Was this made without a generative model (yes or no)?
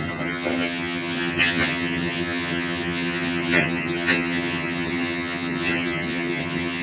no